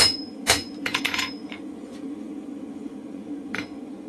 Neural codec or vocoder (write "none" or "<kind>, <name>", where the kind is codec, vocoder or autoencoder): vocoder, Vocos